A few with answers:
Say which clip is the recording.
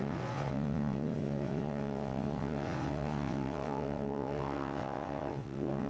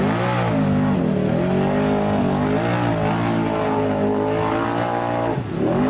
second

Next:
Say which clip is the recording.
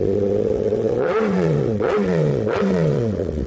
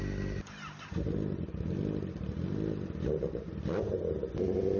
second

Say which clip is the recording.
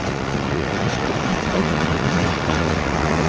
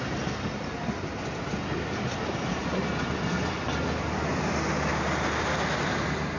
second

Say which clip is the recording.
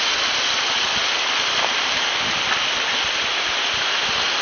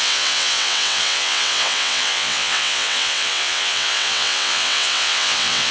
first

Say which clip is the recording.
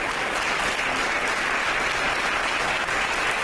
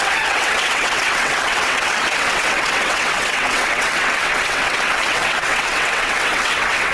first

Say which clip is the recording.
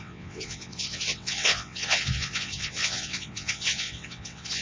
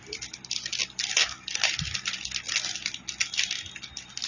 second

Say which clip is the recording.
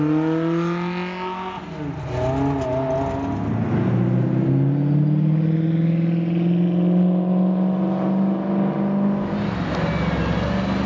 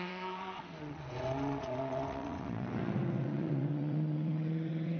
first